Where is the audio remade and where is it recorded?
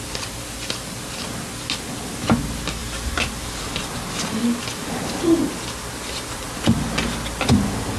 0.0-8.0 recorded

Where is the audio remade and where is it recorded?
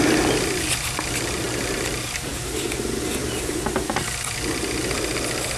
0.0-5.6 recorded